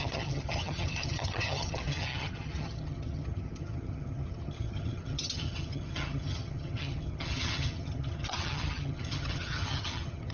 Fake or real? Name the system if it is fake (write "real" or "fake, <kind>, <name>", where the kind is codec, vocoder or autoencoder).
fake, vocoder, HiFi-GAN